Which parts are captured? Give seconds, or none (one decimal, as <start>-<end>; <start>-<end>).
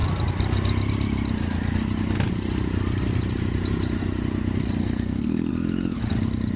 0.0-4.8; 5.5-6.6